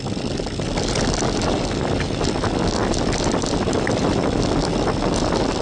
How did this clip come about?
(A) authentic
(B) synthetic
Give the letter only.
A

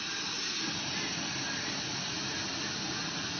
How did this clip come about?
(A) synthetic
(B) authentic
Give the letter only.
B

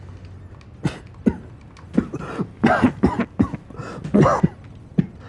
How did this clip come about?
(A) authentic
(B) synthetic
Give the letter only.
A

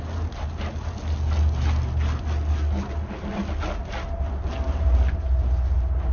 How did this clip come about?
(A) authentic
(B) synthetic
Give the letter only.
A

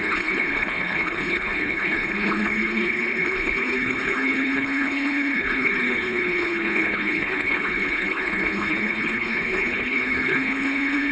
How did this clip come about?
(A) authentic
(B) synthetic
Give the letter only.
B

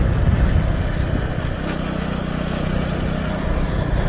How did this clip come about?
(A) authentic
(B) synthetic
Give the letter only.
A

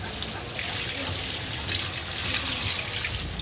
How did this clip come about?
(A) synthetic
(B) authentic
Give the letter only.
B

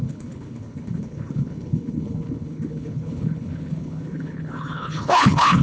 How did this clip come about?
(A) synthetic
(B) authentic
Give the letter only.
A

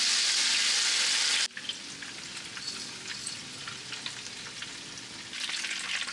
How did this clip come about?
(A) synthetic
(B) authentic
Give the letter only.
B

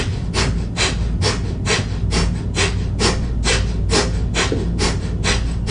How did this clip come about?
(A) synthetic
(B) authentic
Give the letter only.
B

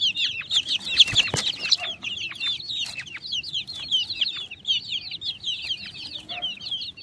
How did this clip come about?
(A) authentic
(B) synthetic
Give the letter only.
A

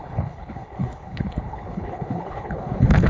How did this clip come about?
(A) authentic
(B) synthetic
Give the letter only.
B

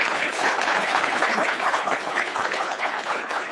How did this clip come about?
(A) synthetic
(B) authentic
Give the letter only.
A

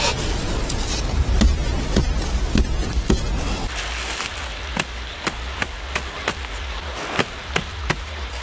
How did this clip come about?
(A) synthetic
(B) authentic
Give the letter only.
B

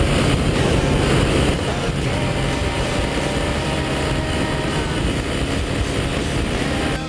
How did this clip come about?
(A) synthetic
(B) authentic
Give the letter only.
B